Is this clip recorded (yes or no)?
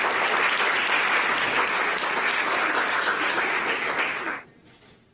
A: yes